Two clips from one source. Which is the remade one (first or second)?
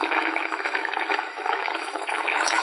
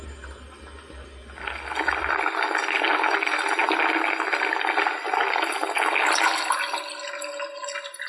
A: first